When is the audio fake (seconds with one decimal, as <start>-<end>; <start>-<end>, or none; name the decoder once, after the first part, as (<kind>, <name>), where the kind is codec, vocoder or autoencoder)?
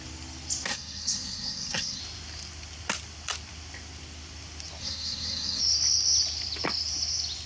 0.7-2.0 (codec, SNAC); 4.8-5.6